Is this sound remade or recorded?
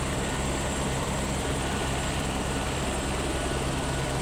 remade